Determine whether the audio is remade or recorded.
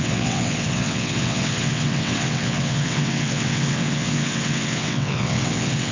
remade